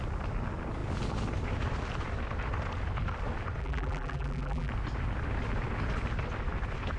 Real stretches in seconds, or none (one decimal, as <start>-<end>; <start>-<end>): 0.0-3.6; 4.7-7.0